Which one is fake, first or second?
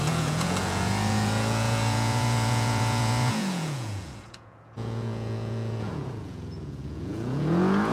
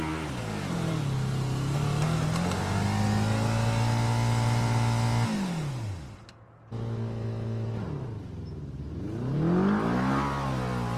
first